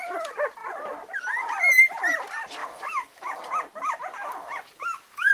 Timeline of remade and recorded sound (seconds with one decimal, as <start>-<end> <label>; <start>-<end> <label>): 0.0-2.6 recorded; 2.6-3.4 remade; 3.4-4.2 recorded; 4.2-5.3 remade